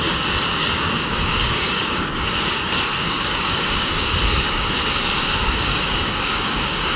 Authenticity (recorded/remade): remade